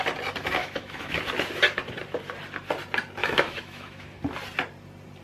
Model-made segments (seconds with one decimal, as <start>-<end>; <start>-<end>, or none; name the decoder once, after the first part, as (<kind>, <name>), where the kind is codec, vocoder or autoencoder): 0.6-1.2 (autoencoder, DAC-VAE); 3.2-4.2